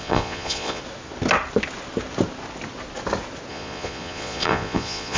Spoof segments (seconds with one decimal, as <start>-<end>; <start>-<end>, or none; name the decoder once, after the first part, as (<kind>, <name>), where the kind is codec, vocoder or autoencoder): 0.0-0.8 (vocoder, Vocos); 3.5-5.2